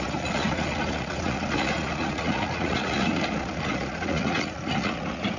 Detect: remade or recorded remade